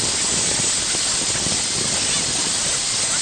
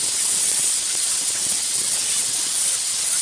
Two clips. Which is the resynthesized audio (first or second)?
second